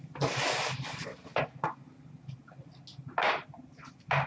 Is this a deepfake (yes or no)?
no